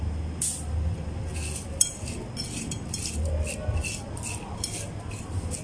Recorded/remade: recorded